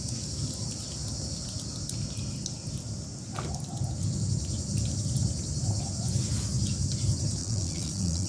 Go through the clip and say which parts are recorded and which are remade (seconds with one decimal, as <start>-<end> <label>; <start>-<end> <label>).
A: 0.0-7.4 recorded; 7.4-8.3 remade